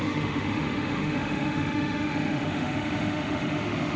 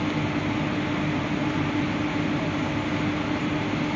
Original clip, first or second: second